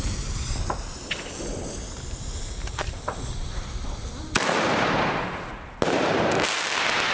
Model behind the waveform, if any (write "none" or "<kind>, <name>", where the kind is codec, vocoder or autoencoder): none